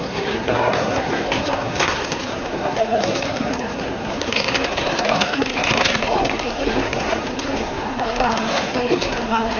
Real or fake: fake